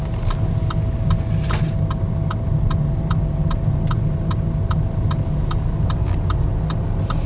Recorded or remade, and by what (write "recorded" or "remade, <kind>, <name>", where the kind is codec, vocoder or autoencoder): recorded